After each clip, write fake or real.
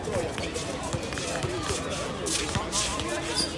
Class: real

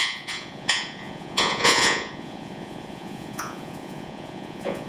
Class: fake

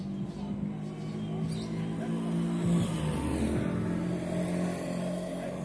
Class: real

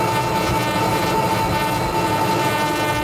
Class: real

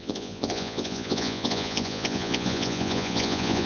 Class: fake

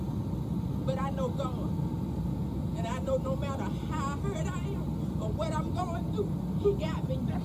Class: real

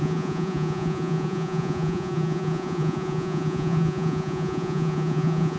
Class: fake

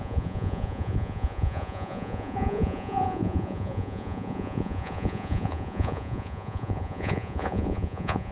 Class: fake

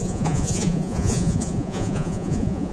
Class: fake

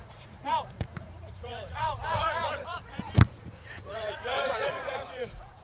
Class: fake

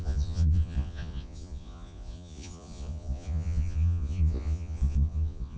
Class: fake